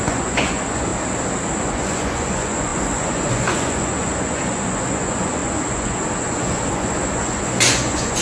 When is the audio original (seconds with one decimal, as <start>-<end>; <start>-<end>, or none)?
0.9-1.6